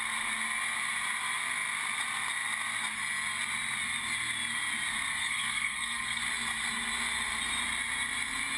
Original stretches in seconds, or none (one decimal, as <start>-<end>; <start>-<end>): 0.0-5.2; 6.2-8.6